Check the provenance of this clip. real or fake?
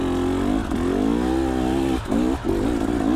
real